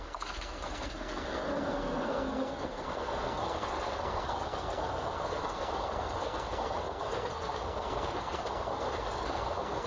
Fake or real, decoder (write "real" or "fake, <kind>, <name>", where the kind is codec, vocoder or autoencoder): fake, codec, SNAC